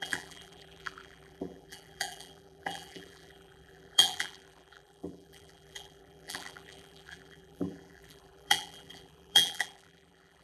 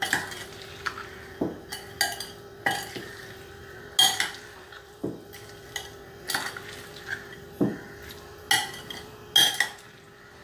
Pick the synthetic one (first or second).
first